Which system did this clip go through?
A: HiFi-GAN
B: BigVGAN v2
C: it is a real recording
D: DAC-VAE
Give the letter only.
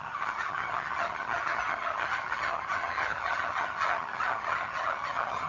A